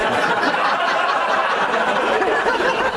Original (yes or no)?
yes